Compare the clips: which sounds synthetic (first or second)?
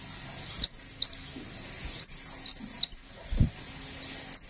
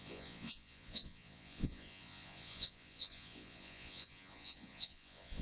second